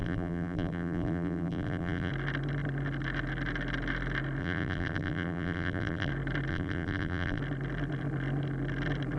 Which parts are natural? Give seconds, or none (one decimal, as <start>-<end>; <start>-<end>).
2.1-4.4; 6.1-6.5; 7.4-9.2